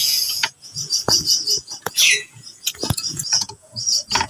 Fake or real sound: fake